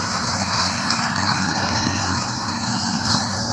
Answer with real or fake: fake